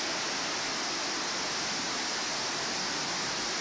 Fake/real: real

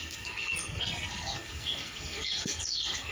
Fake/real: fake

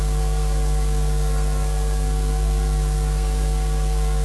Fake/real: fake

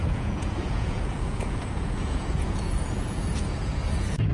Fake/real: fake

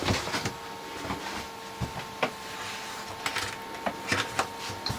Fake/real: real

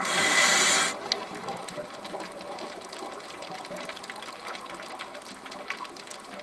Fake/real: real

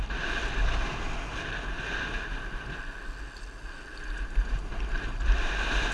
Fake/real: real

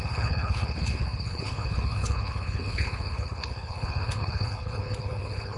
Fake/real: fake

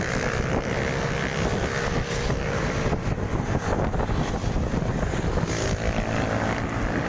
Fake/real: real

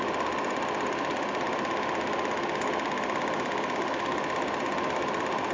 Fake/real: real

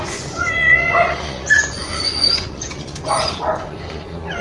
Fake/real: fake